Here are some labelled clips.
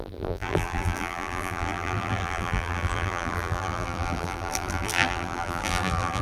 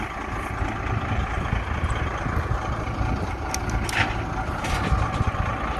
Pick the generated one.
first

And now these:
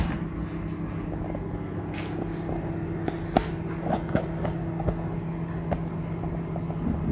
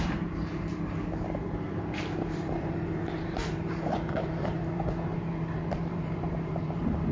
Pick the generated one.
second